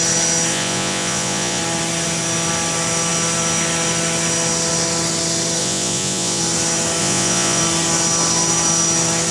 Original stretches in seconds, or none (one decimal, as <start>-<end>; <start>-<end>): 0.0-0.5; 1.6-5.6; 6.4-7.0; 7.6-9.3